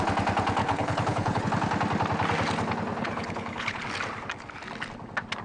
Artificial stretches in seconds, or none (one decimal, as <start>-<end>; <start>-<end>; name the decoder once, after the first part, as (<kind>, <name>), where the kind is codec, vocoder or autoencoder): 0.6-1.4 (codec, HILCodec); 3.0-3.8

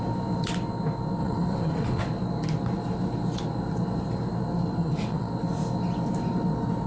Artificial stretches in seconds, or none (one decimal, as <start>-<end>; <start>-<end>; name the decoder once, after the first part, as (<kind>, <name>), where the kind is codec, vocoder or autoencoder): 1.2-2.0 (vocoder, WaveNeXt); 4.8-5.3

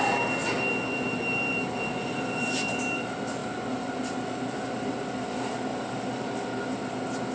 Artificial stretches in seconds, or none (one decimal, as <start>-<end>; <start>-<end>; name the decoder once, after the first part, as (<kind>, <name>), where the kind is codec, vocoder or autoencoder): 0.4-2.8 (vocoder, BigVGAN v2); 5.7-6.3

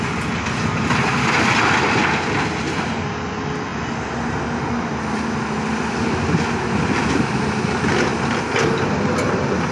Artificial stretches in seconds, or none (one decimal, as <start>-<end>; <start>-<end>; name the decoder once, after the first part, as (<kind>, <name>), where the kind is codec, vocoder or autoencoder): none

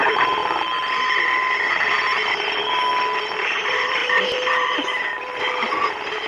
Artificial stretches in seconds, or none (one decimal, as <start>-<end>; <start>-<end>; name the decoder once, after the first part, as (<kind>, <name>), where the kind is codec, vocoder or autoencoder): 0.0-0.4 (vocoder, BigVGAN v2); 1.7-2.6; 3.2-6.3

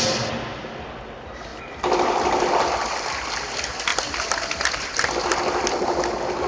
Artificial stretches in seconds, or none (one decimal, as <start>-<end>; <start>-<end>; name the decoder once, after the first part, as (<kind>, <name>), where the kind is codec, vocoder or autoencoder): 3.9-5.3 (vocoder, BigVGAN v2)

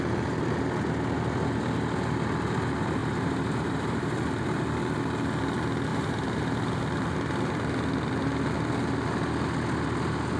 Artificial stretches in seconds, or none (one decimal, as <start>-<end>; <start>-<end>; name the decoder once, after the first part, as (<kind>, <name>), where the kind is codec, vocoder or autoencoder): 3.0-4.6 (vocoder, BigVGAN v2); 5.9-6.6